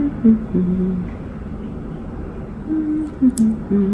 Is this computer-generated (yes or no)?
no